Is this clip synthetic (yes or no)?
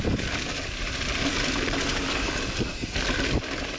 no